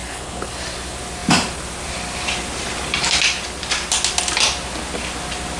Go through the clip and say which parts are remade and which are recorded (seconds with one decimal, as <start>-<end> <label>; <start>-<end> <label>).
0.0-0.5 remade; 0.5-5.6 recorded